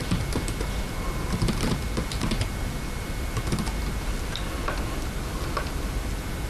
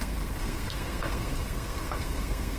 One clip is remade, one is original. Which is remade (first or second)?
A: second